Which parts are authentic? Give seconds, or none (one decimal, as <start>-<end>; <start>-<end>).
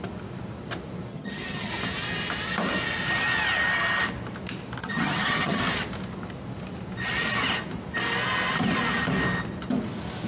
0.0-1.1; 1.7-4.8; 5.6-10.3